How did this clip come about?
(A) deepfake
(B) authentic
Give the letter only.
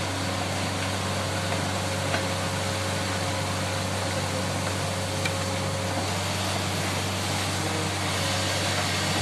B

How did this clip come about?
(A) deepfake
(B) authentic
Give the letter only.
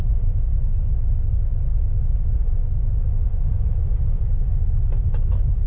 B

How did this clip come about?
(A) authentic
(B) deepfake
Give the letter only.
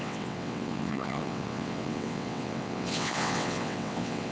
B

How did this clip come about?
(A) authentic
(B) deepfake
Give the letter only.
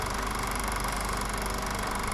A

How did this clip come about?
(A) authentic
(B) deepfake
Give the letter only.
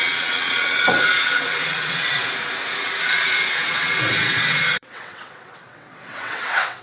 B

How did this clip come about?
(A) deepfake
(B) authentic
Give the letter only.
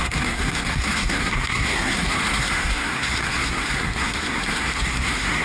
A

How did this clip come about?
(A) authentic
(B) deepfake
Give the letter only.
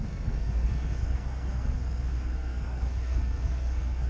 B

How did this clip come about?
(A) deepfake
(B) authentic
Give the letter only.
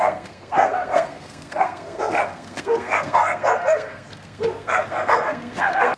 A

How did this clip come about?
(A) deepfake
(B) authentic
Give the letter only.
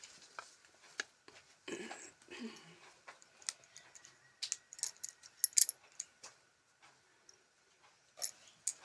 B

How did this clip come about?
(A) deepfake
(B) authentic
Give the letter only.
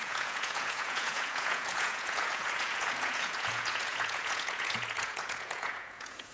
A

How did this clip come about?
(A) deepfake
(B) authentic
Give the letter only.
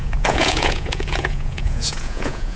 A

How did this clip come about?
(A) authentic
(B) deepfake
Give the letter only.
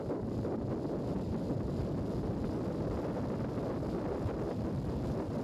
A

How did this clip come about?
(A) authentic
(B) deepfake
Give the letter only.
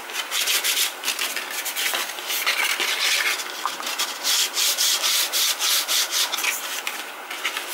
A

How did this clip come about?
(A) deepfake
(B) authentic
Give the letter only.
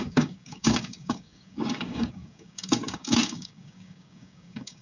A